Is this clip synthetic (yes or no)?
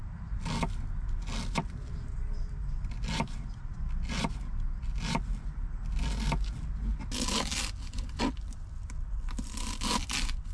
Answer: no